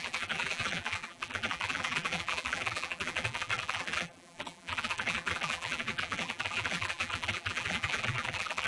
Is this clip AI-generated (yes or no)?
yes